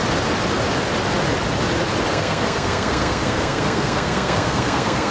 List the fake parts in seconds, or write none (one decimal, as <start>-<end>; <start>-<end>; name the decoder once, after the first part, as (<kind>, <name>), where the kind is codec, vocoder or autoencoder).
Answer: 2.1-5.1 (codec, SNAC)